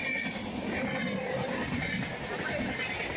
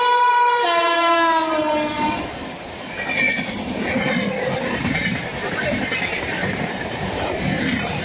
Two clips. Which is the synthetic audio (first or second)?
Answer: second